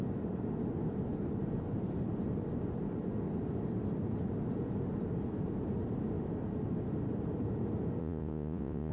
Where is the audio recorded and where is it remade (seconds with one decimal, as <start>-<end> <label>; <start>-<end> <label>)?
0.0-8.0 recorded; 8.0-8.9 remade